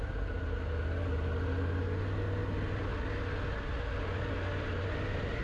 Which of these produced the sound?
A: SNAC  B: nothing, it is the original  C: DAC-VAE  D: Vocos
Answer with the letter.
B